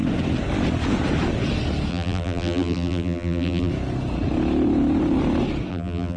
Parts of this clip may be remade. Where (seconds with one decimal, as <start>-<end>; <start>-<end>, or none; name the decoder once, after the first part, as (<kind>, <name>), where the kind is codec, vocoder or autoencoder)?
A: 1.9-3.7 (vocoder, BigVGAN v2); 5.7-6.2

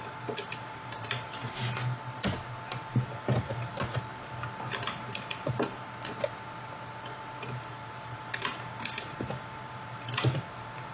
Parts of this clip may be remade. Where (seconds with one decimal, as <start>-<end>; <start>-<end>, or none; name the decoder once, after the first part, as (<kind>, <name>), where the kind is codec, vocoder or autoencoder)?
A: 0.0-1.6 (vocoder, BigVGAN v2); 3.1-4.1; 4.7-5.7; 7.4-10.9

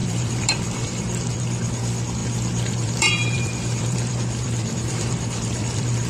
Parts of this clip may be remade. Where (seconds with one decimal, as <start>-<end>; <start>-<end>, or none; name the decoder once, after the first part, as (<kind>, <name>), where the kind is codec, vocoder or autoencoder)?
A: 0.0-1.4 (vocoder, BigVGAN v2); 2.2-6.1

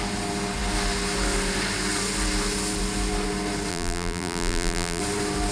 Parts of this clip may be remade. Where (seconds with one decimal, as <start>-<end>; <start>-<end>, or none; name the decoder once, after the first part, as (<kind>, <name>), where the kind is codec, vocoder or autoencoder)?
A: 3.7-5.0 (vocoder, BigVGAN v2)

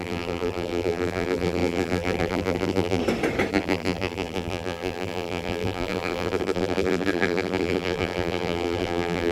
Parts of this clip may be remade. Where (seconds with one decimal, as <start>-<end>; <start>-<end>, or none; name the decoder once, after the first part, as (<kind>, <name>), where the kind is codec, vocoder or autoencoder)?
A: 0.0-3.0 (vocoder, BigVGAN v2); 3.5-9.3

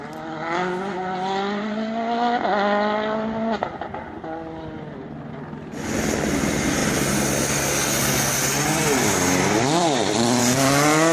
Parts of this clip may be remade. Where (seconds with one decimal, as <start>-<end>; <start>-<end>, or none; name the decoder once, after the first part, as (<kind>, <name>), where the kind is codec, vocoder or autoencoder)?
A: none

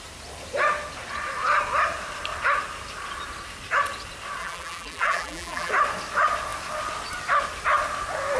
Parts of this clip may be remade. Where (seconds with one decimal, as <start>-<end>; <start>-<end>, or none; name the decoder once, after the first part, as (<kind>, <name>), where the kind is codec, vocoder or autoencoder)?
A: 4.4-5.7 (vocoder, BigVGAN v2)